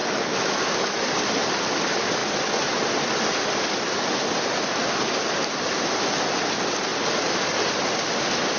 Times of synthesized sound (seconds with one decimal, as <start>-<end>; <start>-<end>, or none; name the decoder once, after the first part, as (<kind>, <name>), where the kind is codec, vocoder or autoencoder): 0.0-1.0 (autoencoder, DAC-VAE)

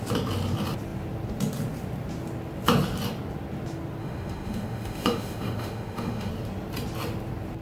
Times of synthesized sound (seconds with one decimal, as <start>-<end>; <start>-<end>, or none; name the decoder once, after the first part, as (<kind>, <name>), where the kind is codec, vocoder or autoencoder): 4.0-6.3 (autoencoder, DAC-VAE)

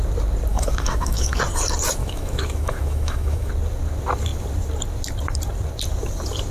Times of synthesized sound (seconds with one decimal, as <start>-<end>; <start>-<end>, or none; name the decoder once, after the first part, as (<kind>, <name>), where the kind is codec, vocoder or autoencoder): 0.5-1.4 (autoencoder, DAC-VAE); 2.0-3.5

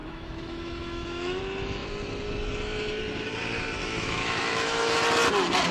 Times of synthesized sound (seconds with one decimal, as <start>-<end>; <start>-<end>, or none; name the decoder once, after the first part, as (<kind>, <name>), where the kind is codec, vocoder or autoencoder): 0.0-1.4 (autoencoder, DAC-VAE); 3.8-5.0

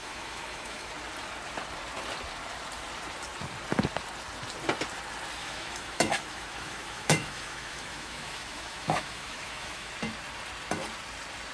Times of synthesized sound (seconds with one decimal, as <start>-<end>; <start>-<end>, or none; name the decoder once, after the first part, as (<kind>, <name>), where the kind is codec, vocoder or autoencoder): 0.0-0.9 (autoencoder, DAC-VAE); 5.4-9.9